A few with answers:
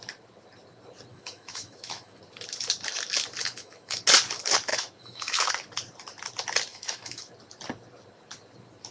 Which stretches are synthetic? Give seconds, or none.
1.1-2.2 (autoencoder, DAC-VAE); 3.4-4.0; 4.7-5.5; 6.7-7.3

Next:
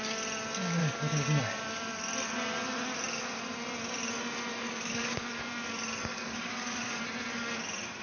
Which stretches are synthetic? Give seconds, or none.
0.8-1.4 (codec, DAC); 4.5-5.5; 6.2-7.0

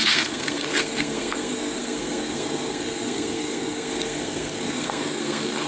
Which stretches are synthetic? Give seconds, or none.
0.0-5.7 (codec, SNAC)

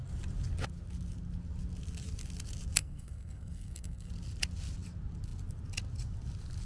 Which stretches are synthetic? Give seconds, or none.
2.8-4.1 (codec, SNAC)